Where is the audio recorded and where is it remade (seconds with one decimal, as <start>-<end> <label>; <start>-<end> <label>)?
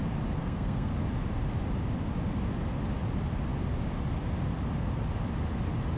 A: 0.0-0.4 recorded; 0.4-0.9 remade; 0.9-6.0 recorded